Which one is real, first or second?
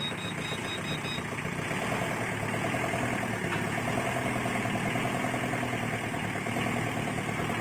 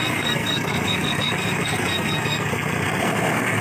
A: first